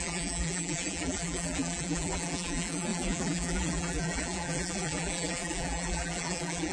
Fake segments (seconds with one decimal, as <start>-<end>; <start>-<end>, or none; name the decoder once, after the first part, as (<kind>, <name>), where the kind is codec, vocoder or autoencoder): 0.0-6.7 (vocoder, BigVGAN v2)